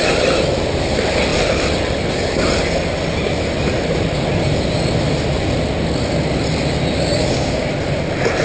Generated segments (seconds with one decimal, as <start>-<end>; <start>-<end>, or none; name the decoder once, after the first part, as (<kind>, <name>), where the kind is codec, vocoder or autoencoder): 7.2-7.7 (codec, DAC)